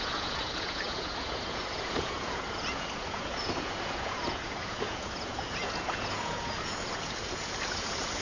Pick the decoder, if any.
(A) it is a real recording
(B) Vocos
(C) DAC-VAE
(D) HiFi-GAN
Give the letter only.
B